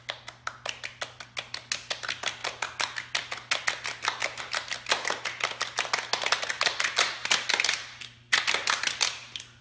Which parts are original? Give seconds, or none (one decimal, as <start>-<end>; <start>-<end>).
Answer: 0.0-9.6